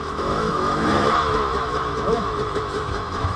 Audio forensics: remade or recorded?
remade